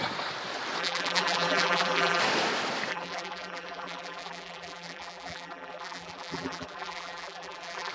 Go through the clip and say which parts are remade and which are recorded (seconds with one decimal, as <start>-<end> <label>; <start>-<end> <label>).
0.0-0.8 recorded; 0.8-2.2 remade; 2.2-2.9 recorded; 2.9-7.9 remade